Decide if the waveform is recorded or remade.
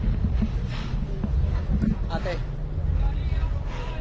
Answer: recorded